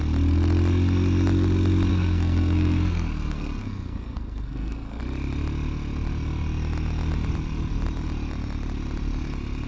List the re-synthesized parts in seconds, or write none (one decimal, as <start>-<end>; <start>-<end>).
1.9-5.0